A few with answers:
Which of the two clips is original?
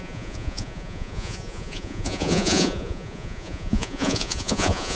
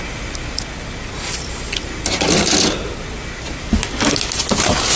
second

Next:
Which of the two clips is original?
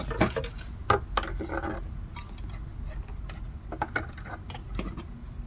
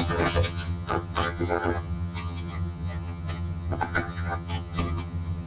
first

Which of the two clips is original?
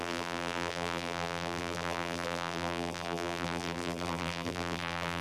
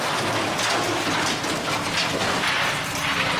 second